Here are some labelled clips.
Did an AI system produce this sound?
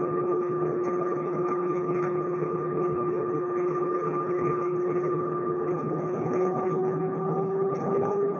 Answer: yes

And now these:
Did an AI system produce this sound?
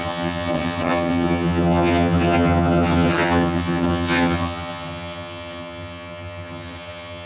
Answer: yes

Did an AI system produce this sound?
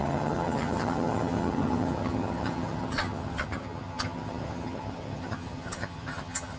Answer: yes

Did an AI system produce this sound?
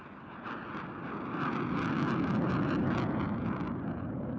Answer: no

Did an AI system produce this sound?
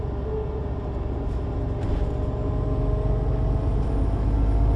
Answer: no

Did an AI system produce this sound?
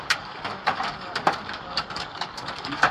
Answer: yes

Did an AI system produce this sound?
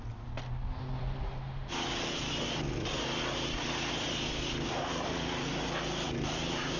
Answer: no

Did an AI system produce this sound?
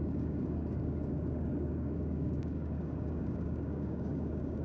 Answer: yes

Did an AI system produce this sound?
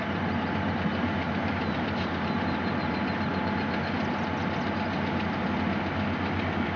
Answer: no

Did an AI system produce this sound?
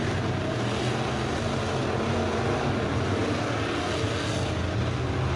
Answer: no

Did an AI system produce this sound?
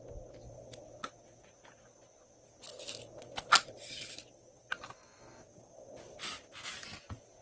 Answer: no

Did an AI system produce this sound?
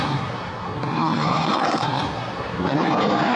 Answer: yes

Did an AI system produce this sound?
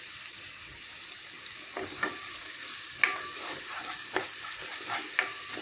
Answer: no